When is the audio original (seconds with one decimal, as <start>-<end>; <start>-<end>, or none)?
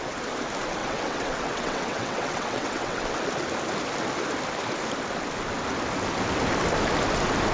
0.0-0.8; 3.1-7.5